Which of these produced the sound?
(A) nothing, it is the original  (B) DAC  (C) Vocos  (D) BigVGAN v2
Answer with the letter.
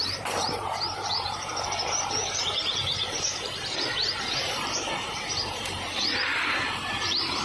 D